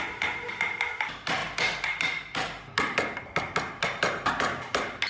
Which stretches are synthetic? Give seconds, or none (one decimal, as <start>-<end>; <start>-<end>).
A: none